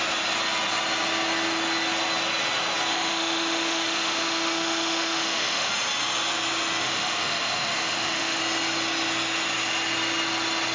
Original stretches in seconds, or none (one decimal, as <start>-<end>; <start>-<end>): 0.0-2.9; 5.7-6.8; 8.4-10.7